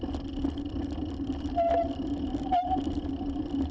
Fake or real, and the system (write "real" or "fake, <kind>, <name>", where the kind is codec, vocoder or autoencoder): real